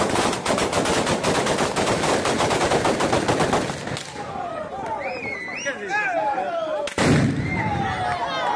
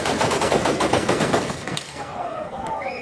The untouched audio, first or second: first